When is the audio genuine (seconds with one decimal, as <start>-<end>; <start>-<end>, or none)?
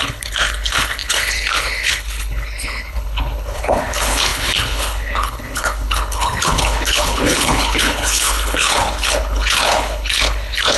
none